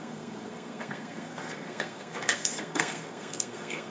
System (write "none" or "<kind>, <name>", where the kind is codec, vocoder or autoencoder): codec, SNAC